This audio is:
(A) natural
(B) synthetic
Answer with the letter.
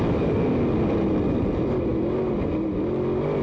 A